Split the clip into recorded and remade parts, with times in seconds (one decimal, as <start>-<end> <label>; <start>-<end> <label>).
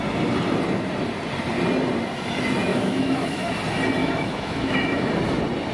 0.0-2.7 recorded; 2.7-3.5 remade; 3.5-4.0 recorded; 4.0-5.1 remade; 5.1-5.7 recorded